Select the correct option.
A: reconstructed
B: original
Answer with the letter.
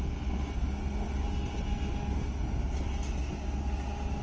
B